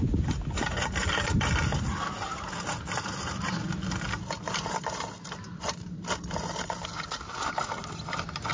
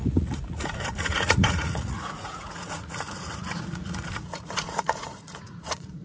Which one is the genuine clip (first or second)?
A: first